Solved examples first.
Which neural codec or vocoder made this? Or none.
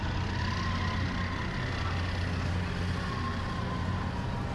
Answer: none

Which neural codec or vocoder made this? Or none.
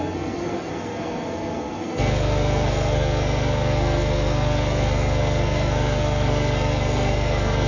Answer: codec, SNAC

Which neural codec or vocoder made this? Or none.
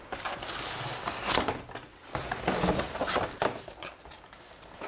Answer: none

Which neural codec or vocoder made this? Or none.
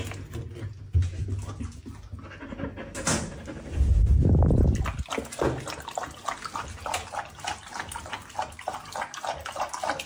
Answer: none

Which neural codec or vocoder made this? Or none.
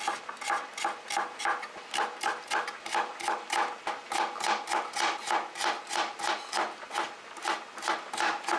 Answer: none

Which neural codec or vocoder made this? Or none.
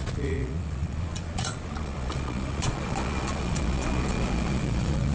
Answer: vocoder, Vocos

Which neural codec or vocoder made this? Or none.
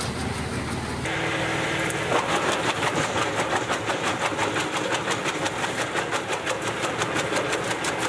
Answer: none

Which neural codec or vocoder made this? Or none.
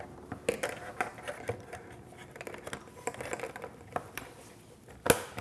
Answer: none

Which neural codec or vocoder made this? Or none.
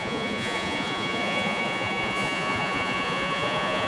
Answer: vocoder, Vocos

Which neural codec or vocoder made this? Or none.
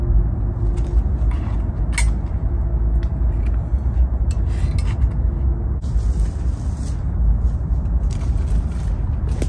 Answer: none